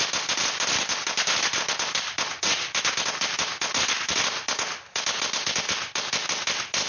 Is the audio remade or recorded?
recorded